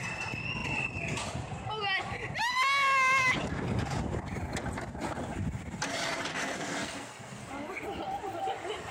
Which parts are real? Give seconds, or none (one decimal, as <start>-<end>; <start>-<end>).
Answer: 0.0-6.3; 7.5-8.9